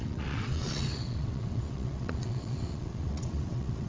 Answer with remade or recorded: remade